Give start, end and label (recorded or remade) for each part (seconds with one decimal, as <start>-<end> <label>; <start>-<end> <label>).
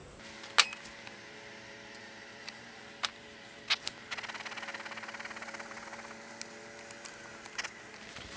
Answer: 0.0-2.0 recorded; 2.0-2.8 remade; 2.8-8.4 recorded